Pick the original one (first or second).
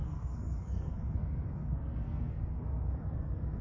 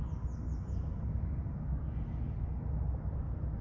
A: second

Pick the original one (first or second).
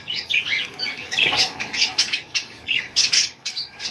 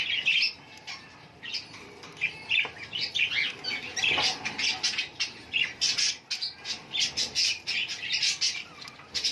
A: second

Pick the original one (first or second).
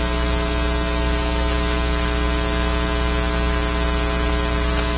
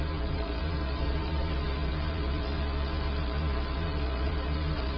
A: first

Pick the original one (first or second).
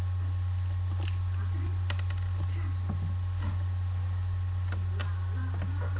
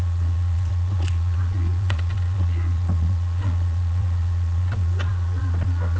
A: first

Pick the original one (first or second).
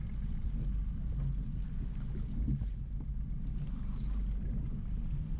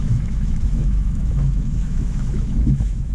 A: first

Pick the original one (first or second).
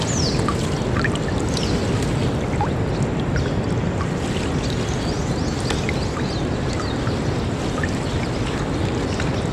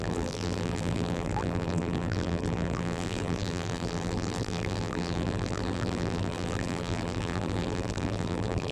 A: first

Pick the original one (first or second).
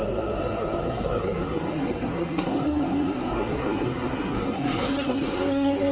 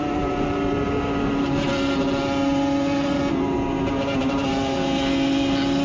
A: second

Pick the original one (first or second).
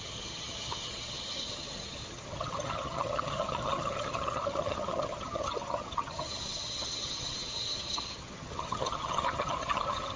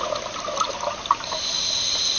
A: second